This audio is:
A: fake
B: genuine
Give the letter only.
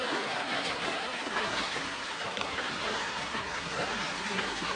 A